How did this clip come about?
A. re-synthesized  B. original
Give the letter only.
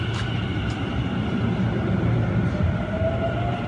B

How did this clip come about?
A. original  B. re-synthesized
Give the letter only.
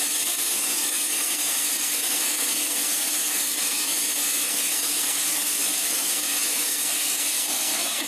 B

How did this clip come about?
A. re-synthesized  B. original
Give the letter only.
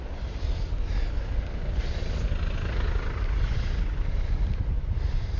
B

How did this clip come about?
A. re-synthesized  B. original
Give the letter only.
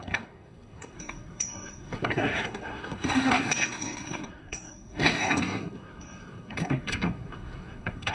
A